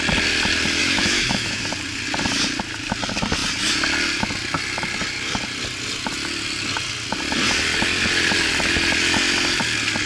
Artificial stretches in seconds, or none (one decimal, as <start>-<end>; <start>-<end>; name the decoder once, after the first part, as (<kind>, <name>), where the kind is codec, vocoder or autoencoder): 0.8-1.6 (autoencoder, DAC-VAE)